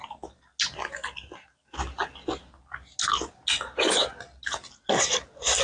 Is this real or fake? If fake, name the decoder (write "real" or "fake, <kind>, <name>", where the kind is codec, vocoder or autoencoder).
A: real